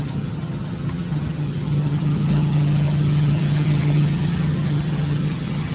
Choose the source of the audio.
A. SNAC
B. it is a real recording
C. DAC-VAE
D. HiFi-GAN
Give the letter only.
D